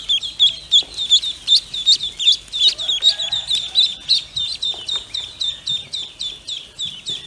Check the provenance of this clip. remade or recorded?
recorded